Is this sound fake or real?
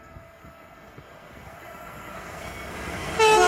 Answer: fake